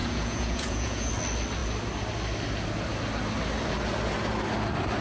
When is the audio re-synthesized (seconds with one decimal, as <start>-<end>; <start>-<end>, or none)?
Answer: 0.0-1.1

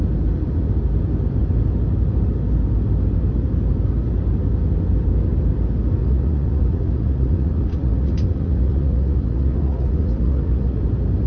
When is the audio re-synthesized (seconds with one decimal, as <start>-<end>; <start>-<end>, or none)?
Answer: 6.0-10.8

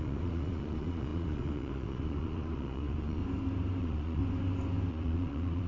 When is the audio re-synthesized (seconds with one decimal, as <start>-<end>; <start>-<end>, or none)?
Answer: 0.0-3.2; 3.8-4.2; 4.9-5.7

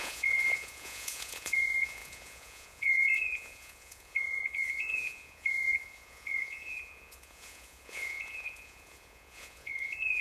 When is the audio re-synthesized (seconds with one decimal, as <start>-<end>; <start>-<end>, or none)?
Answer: 0.0-10.2